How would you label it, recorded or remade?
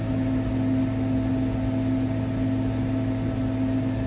recorded